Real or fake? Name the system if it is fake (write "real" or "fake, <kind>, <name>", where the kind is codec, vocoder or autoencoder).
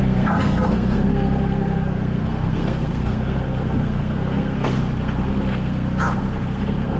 fake, codec, SNAC